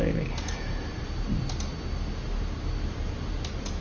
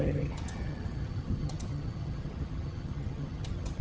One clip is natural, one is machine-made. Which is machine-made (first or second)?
second